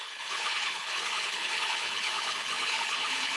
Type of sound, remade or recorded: remade